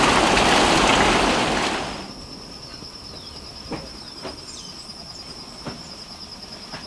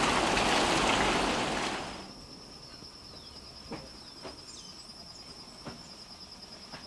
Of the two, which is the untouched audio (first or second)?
second